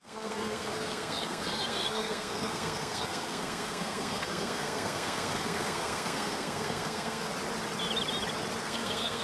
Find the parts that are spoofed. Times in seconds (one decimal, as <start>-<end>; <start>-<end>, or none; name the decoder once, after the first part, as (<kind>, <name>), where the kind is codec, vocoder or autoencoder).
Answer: 0.0-7.3 (codec, SNAC); 8.6-9.2